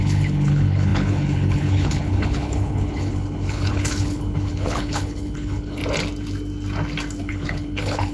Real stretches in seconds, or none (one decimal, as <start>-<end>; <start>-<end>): 5.8-7.2